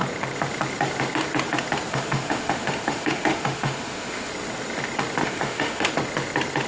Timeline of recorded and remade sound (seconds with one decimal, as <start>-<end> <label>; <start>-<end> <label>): 0.0-1.9 recorded; 1.9-4.3 remade; 4.3-5.2 recorded; 5.2-5.9 remade; 5.9-6.7 recorded